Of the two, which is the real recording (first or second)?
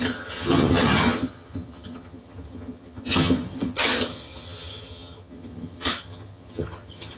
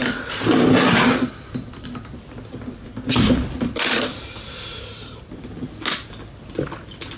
second